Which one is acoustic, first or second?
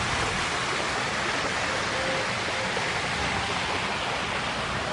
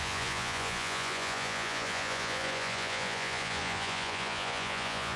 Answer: first